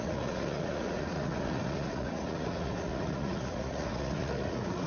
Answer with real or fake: fake